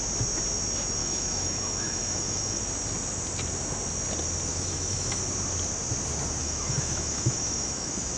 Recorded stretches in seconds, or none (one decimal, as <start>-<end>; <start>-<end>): 0.0-1.0; 2.6-4.5; 5.2-6.4